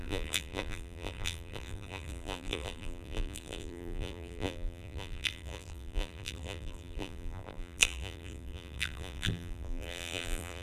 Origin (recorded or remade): remade